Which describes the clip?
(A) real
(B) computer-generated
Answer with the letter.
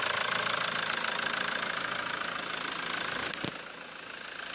A